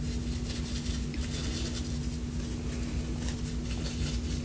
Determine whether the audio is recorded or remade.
recorded